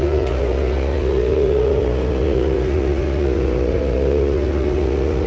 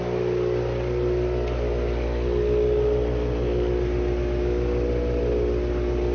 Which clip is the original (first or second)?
second